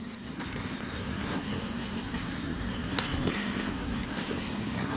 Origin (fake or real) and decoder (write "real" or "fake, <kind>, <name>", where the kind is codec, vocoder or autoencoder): fake, codec, SNAC